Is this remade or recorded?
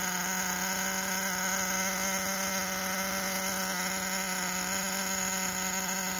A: recorded